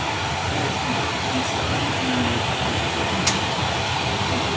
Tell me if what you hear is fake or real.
real